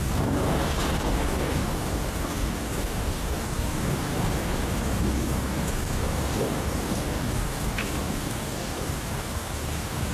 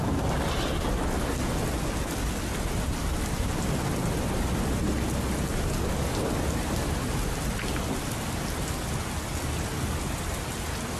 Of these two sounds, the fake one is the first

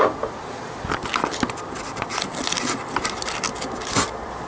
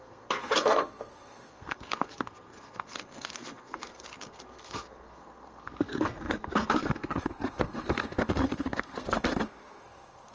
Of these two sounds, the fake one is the second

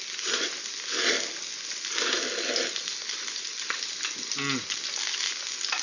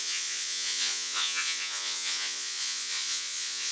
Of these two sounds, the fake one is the second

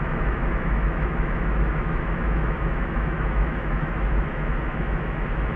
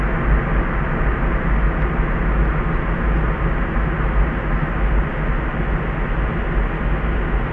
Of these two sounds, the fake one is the first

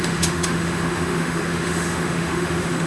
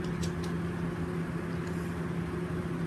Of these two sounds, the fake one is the first